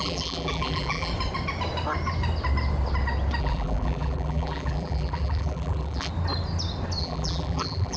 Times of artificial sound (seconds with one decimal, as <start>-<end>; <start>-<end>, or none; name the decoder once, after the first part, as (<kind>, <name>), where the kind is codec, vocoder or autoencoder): 0.0-1.1 (vocoder, BigVGAN v2); 3.4-6.1; 7.0-8.0